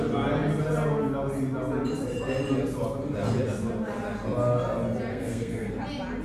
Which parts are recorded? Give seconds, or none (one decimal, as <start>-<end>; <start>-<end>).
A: 0.0-5.1; 5.7-6.2